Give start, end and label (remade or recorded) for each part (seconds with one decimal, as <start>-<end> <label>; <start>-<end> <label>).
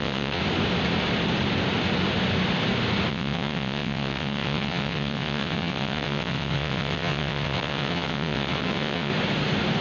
0.0-0.4 remade; 0.4-3.1 recorded; 3.1-9.1 remade; 9.1-9.8 recorded